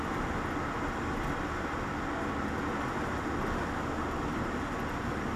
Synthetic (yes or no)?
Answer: no